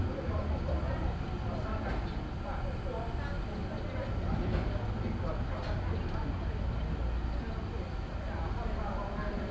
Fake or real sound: real